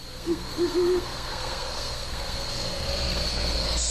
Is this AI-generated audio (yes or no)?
yes